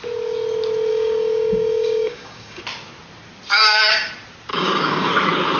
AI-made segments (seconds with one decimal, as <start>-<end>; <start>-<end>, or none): 0.9-2.6; 3.5-4.1; 4.5-5.1